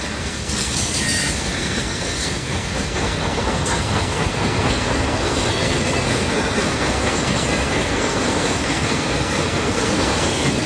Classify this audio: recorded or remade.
remade